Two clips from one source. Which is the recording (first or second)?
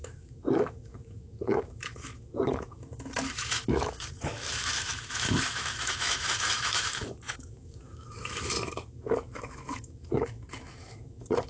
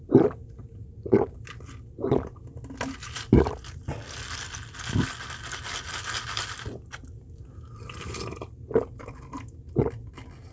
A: second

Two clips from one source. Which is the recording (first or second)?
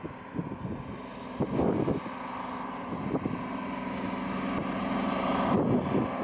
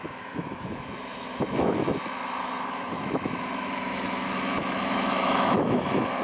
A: first